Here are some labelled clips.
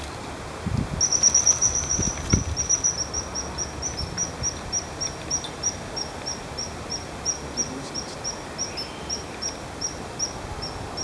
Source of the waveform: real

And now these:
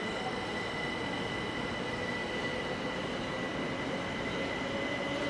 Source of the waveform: real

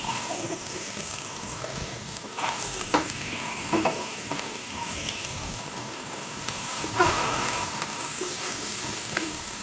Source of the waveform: fake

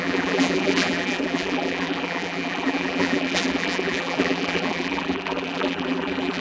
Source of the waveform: fake